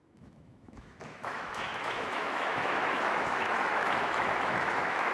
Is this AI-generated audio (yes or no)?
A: yes